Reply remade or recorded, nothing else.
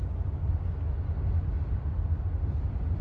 recorded